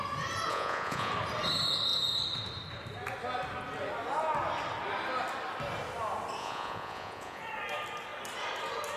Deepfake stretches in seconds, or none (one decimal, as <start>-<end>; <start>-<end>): 0.5-1.1; 6.4-7.4